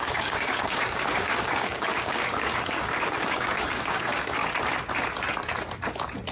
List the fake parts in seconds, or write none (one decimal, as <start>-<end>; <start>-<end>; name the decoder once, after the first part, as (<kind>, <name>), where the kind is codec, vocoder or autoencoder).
0.0-4.4 (codec, DAC)

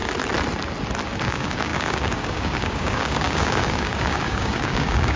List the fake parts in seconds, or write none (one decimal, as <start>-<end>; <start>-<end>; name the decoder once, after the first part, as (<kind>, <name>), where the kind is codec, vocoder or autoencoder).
1.2-5.2 (codec, DAC)

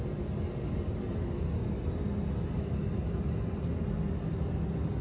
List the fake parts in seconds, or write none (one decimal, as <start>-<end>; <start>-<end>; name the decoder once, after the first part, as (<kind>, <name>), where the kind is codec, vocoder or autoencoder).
none

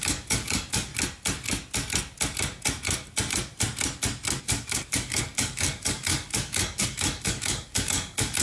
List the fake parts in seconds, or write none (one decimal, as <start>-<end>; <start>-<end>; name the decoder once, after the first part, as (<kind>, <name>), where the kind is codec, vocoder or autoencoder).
0.0-0.9 (codec, DAC); 4.4-8.4